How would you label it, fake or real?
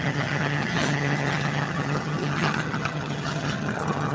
fake